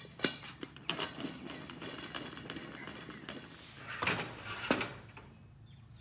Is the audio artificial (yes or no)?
no